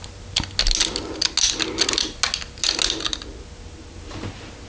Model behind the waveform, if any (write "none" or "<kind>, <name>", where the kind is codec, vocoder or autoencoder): none